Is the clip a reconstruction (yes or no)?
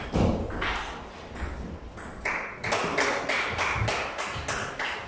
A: no